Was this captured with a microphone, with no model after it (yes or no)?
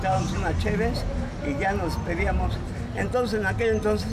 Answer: yes